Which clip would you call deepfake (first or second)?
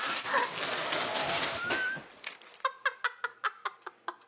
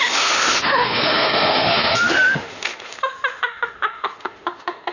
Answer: second